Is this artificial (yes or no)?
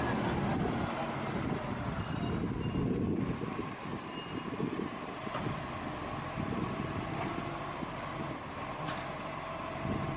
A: no